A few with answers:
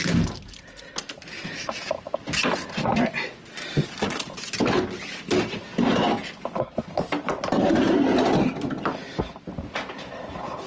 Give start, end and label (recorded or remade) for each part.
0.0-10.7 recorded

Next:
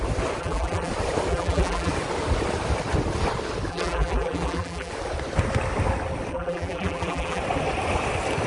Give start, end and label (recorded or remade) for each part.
0.0-0.4 recorded; 0.4-0.9 remade; 0.9-1.3 recorded; 1.3-1.9 remade; 1.9-3.7 recorded; 3.7-4.9 remade; 4.9-6.3 recorded; 6.3-7.4 remade; 7.4-8.5 recorded

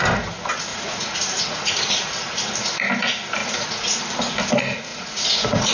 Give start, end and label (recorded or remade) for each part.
0.0-0.7 recorded; 0.7-1.7 remade; 1.7-3.4 recorded; 3.4-4.0 remade; 4.0-4.9 recorded; 4.9-5.7 remade

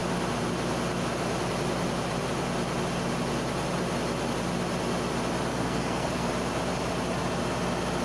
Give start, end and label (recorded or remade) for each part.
0.0-5.5 recorded; 5.5-6.3 remade; 6.3-8.0 recorded

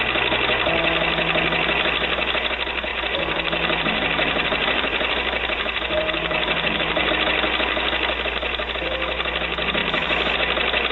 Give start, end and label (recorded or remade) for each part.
0.0-2.9 recorded; 2.9-7.1 remade; 7.1-9.8 recorded; 9.8-10.3 remade; 10.3-10.9 recorded

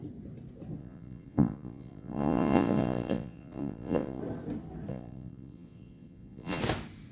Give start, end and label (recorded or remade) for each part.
0.0-0.8 recorded; 0.8-4.2 remade; 4.2-4.9 recorded; 4.9-6.6 remade; 6.6-7.1 recorded